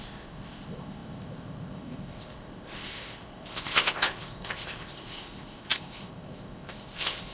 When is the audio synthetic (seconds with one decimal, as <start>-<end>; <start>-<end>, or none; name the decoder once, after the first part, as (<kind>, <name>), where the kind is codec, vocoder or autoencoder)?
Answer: 0.0-7.3 (codec, ZipCodec)